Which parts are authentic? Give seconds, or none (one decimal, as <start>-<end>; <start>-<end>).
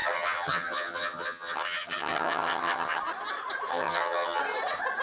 3.0-3.7; 4.4-5.0